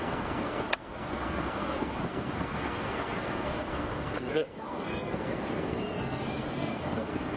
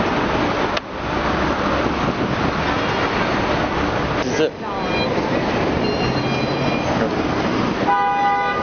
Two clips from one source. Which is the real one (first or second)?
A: second